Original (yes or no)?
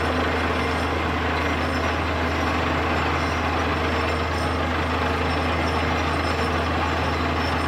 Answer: yes